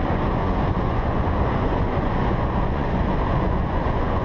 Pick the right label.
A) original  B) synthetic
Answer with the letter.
B